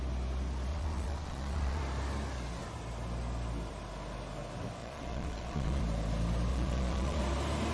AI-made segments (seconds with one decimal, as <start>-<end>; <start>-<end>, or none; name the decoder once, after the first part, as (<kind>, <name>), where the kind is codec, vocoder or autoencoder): 0.7-1.8 (vocoder, Vocos); 4.8-5.8; 6.5-7.2